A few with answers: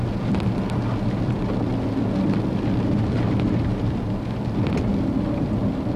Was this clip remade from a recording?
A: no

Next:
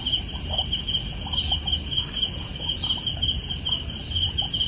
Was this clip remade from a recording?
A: no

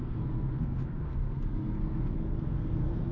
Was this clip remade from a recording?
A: yes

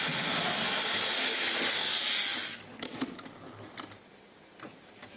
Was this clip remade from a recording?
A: no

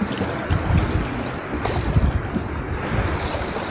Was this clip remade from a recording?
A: no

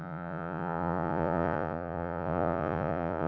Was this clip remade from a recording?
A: yes